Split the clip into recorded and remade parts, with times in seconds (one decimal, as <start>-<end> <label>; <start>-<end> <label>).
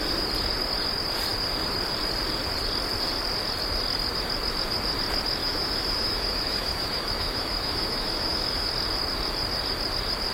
0.0-5.4 recorded; 5.4-8.7 remade; 8.7-10.3 recorded